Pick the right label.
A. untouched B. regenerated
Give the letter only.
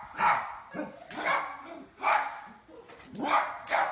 A